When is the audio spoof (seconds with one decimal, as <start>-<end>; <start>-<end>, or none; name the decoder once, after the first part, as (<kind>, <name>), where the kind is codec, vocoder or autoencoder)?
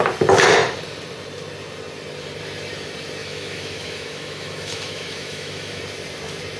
3.2-5.8 (autoencoder, DAC-VAE)